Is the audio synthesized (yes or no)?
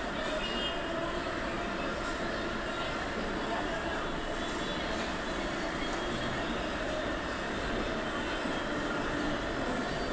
no